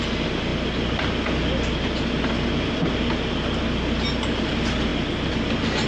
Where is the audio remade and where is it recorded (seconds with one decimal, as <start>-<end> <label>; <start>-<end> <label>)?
0.0-5.9 recorded